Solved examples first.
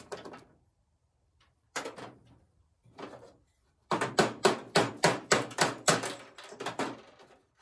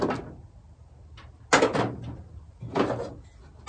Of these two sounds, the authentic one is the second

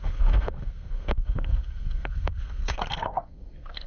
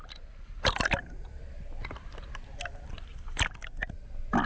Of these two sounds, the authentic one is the second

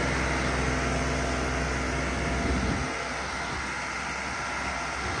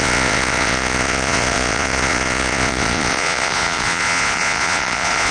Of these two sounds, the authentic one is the first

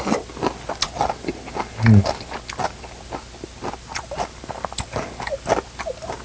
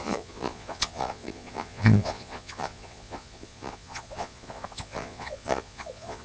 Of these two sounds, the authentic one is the first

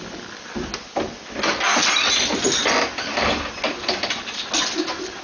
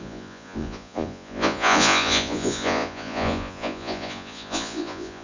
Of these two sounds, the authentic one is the first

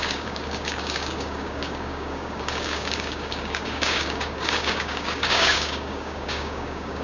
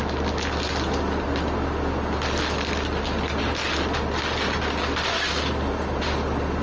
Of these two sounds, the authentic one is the second